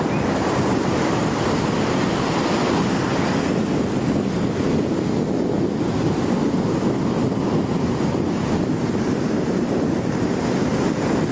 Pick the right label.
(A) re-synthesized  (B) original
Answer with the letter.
B